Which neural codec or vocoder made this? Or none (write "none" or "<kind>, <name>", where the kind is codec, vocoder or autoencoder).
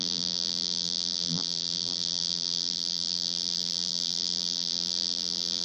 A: vocoder, BigVGAN v2